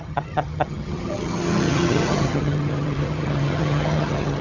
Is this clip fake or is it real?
fake